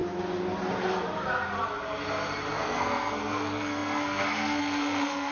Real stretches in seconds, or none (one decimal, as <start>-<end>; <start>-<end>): 0.0-2.5